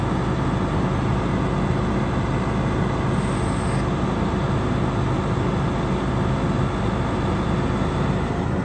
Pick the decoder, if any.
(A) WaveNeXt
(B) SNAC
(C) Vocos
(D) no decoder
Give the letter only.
D